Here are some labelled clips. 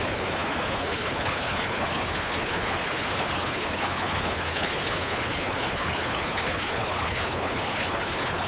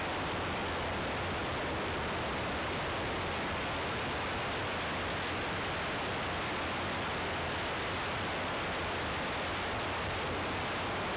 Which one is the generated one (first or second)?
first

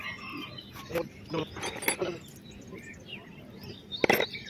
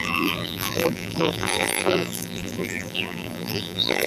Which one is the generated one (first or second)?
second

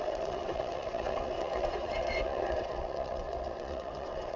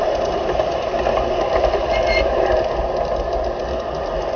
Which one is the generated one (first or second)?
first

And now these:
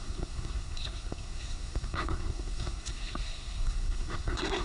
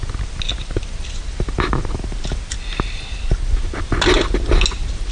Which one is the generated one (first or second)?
first